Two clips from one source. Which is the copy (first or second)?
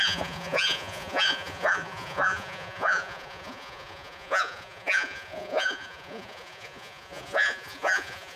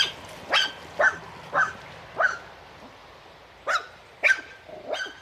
first